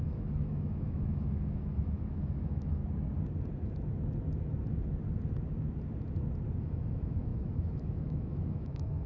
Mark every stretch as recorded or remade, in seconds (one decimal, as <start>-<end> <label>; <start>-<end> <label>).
0.0-2.8 remade; 2.8-6.6 recorded; 6.6-9.1 remade

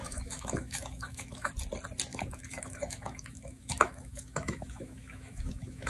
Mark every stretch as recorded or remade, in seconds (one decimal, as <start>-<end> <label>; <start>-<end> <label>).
0.0-1.5 remade; 1.5-2.1 recorded; 2.1-5.9 remade

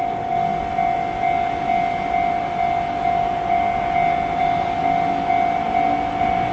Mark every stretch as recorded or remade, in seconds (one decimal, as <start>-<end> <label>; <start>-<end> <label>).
0.0-6.5 recorded

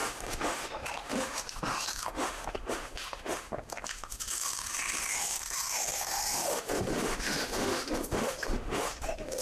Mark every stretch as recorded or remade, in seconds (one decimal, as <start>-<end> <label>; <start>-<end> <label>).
0.0-9.4 remade

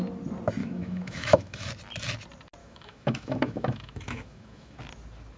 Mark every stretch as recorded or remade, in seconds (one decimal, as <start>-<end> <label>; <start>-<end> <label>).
0.0-0.6 recorded; 0.6-1.7 remade; 1.7-2.6 recorded; 2.6-4.8 remade; 4.8-5.4 recorded

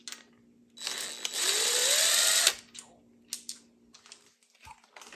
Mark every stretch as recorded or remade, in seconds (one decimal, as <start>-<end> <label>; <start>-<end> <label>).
0.0-5.2 recorded

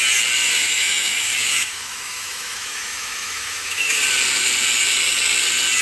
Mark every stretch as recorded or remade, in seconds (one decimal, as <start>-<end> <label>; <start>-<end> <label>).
0.0-0.5 recorded; 0.5-4.0 remade; 4.0-5.8 recorded

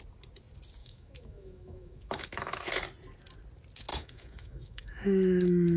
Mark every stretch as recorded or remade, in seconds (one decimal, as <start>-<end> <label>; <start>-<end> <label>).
0.0-0.8 recorded; 0.8-2.7 remade; 2.7-3.9 recorded; 3.9-5.8 remade